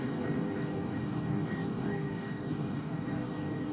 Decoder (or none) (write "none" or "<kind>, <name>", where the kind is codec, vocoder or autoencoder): codec, DAC